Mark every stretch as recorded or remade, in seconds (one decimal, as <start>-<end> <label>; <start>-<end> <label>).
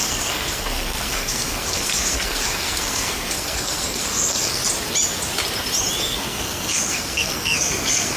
0.0-4.6 remade; 4.6-6.0 recorded; 6.0-8.2 remade